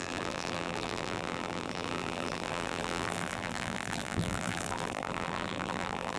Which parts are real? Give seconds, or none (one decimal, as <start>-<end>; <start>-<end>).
none